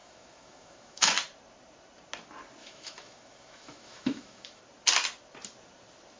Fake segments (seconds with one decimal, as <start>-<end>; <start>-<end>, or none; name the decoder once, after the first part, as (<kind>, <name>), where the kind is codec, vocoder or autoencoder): 0.0-1.1 (autoencoder, DAC-VAE); 2.6-4.6